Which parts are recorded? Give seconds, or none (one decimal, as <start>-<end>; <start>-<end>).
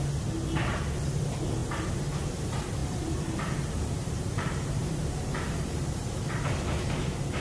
0.0-2.8; 6.3-7.4